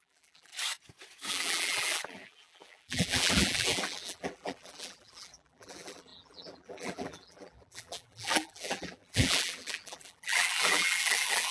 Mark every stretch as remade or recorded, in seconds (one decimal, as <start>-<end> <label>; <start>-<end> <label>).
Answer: 0.0-0.5 remade; 0.5-1.3 recorded; 1.3-11.5 remade